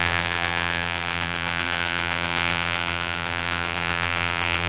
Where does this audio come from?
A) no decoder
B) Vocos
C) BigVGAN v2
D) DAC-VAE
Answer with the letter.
C